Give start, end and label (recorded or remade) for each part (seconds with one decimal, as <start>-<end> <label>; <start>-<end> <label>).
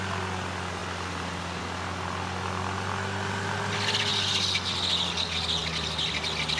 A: 0.0-0.8 recorded; 0.8-1.6 remade; 1.6-5.6 recorded; 5.6-6.6 remade